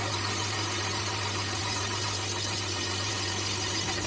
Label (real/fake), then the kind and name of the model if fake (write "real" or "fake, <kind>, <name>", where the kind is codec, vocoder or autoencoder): real